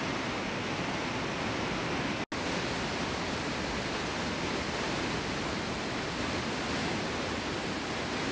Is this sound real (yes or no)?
yes